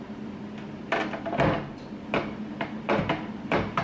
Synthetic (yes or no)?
no